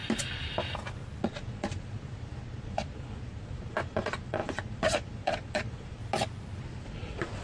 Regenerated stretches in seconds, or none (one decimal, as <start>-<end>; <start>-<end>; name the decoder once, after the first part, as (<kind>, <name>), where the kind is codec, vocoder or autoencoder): 1.2-6.0 (vocoder, Vocos); 6.6-7.4